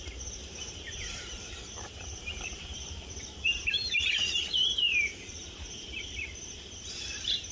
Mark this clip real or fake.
fake